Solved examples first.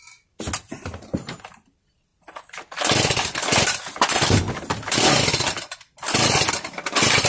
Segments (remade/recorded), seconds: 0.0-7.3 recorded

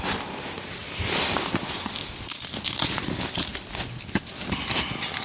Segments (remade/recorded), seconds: 0.0-5.2 recorded

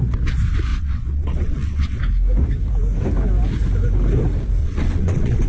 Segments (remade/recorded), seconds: 0.0-0.7 recorded; 0.7-2.0 remade; 2.0-4.6 recorded; 4.6-5.5 remade

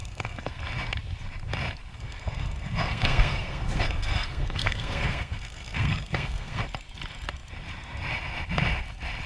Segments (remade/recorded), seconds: 0.0-0.6 remade; 0.6-1.9 recorded; 1.9-6.6 remade; 6.6-9.3 recorded

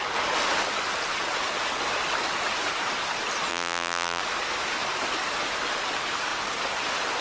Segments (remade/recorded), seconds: 0.0-3.5 recorded; 3.5-4.2 remade; 4.2-7.2 recorded

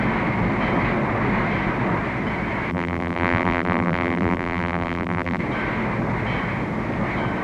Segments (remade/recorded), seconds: 0.0-2.7 recorded; 2.7-5.4 remade; 5.4-7.4 recorded

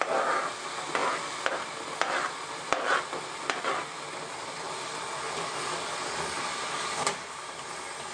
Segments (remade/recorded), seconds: 0.0-8.1 recorded